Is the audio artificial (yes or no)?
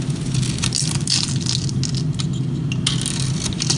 no